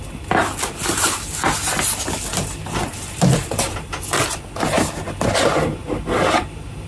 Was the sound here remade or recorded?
recorded